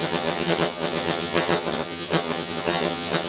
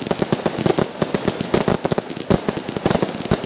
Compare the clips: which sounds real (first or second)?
second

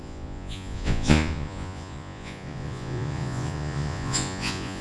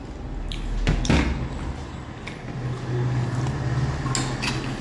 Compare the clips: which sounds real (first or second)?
second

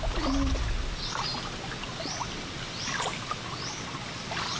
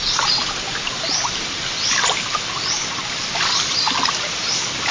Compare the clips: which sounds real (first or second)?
first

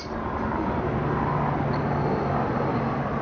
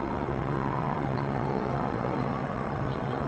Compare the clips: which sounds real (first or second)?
first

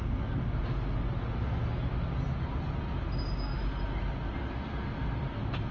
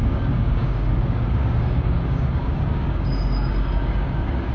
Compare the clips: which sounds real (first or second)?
first